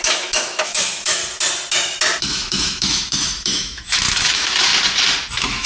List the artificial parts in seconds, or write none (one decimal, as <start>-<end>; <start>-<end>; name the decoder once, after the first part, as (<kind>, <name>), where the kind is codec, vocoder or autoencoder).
0.0-1.2 (autoencoder, DAC-VAE); 2.2-4.7; 5.3-5.7